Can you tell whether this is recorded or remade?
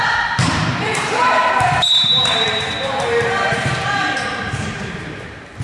remade